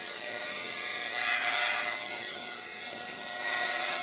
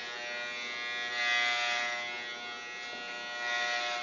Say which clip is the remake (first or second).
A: first